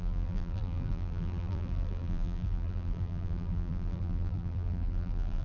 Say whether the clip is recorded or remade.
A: remade